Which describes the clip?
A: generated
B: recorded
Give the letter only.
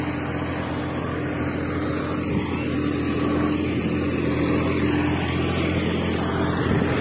B